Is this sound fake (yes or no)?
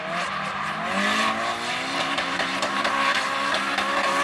no